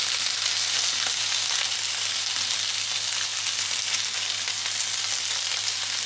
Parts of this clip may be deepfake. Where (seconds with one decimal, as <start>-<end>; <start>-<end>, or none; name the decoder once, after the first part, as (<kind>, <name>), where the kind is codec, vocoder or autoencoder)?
none